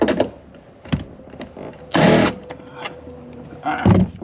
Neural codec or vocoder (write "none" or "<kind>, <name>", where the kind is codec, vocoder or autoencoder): none